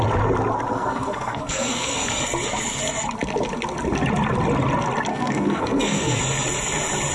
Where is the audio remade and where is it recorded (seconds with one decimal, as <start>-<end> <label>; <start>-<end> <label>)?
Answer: 0.0-0.7 recorded; 0.7-2.1 remade; 2.1-5.1 recorded; 5.1-6.2 remade; 6.2-7.1 recorded